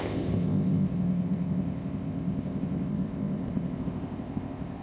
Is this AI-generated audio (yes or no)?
yes